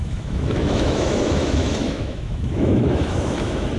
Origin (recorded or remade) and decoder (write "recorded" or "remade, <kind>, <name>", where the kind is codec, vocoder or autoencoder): remade, autoencoder, DAC-VAE